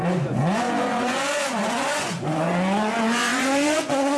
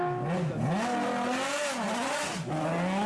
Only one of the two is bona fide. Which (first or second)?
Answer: second